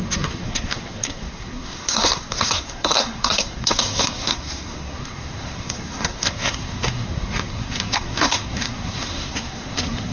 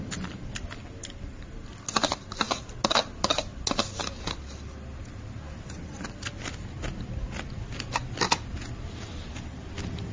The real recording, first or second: second